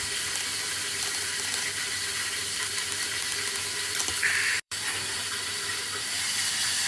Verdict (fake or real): fake